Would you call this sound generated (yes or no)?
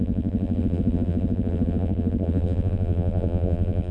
yes